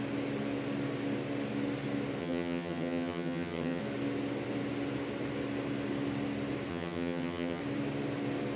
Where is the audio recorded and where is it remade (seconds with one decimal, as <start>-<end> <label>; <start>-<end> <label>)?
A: 0.0-2.2 recorded; 2.2-3.8 remade; 3.8-6.7 recorded; 6.7-7.6 remade; 7.6-8.6 recorded